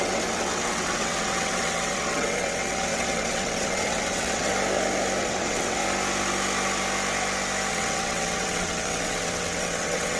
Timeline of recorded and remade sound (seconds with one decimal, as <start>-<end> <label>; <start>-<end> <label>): 0.0-4.5 remade; 4.5-5.2 recorded; 5.2-5.8 remade; 5.8-7.7 recorded; 7.7-10.2 remade